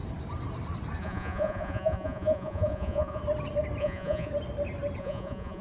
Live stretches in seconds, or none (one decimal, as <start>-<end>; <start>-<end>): 0.0-1.0; 3.2-3.8; 4.3-5.0